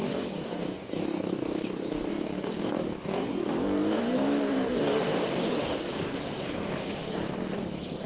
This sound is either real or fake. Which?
fake